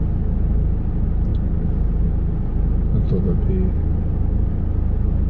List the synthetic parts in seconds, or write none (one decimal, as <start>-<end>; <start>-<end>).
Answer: none